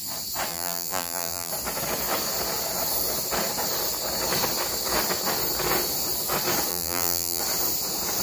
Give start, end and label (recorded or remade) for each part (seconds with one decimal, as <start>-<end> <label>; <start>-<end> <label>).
0.0-0.5 recorded; 0.5-1.5 remade; 1.5-6.7 recorded; 6.7-7.4 remade; 7.4-8.2 recorded